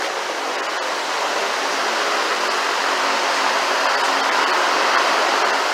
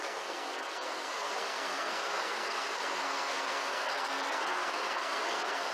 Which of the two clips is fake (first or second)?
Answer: second